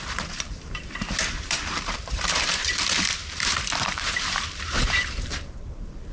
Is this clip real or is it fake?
fake